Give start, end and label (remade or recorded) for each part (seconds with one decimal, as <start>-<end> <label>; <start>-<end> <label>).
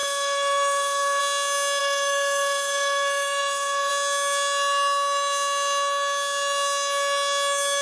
0.0-1.2 remade; 1.2-1.8 recorded; 1.8-3.9 remade; 3.9-7.8 recorded